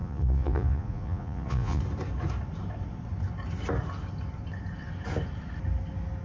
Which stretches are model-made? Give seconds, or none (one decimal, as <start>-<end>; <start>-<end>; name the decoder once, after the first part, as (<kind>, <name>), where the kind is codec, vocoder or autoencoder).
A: 0.0-1.8 (vocoder, Vocos)